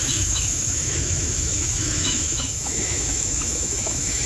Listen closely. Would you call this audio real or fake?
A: fake